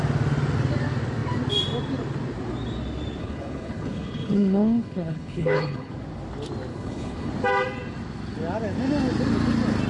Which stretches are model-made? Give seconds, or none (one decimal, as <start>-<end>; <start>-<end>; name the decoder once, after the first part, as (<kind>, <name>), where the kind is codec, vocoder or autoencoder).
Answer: 3.2-5.9 (codec, HILCodec); 6.7-7.3